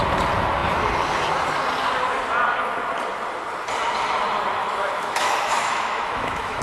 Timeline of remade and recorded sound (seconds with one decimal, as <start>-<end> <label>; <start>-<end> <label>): 0.0-4.6 recorded; 4.6-6.6 remade